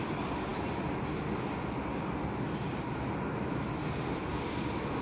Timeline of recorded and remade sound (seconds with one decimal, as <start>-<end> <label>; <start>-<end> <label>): 0.0-5.0 recorded